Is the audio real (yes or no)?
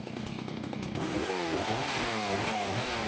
no